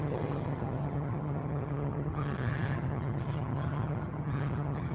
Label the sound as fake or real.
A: fake